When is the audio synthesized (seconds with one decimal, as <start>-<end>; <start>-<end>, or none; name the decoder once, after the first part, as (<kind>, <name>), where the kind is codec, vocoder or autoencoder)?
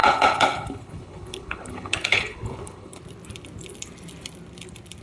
0.0-3.0 (codec, HILCodec)